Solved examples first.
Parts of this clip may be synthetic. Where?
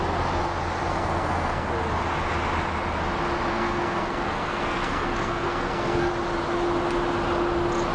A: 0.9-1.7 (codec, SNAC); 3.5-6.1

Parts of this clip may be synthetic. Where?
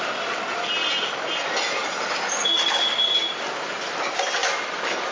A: none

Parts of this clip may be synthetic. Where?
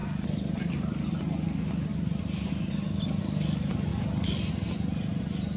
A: none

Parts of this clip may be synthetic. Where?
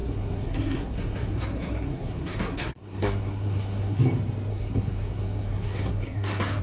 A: 0.0-4.0 (codec, SNAC); 4.5-6.6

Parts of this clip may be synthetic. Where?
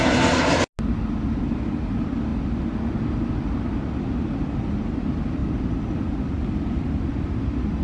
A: none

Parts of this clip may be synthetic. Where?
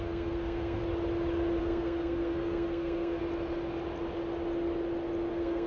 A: 0.0-0.8 (codec, SNAC); 1.6-3.2; 5.3-5.7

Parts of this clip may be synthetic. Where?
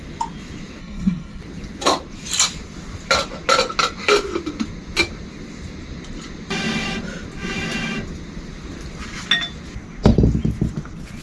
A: 0.8-1.4 (codec, SNAC)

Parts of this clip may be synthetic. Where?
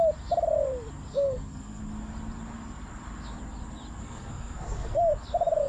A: 1.1-1.8 (codec, SNAC); 4.0-5.0